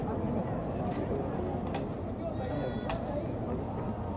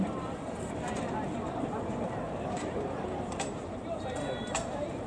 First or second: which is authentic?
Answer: first